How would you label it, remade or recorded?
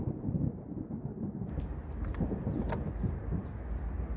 recorded